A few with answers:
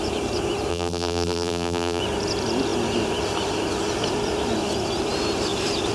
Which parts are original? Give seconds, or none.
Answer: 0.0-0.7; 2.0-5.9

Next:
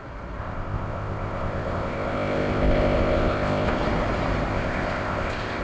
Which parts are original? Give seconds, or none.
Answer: 0.0-0.4; 3.8-4.5

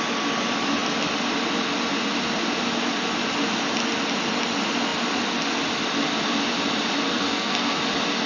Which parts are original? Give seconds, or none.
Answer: 0.0-7.1; 7.8-8.3

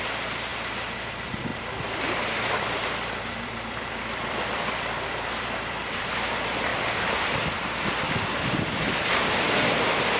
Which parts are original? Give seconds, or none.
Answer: 0.5-1.1; 1.5-2.5

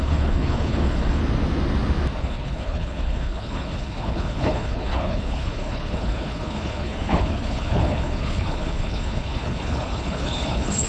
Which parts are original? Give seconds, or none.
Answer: 1.2-2.2